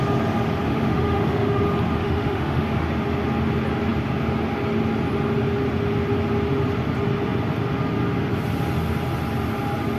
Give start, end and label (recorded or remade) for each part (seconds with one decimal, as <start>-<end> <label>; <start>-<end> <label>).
0.0-0.7 recorded; 0.7-1.6 remade; 1.6-2.0 recorded; 2.0-2.9 remade; 2.9-10.0 recorded